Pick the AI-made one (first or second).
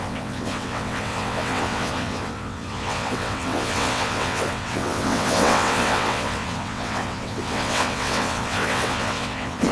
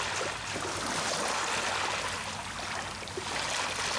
first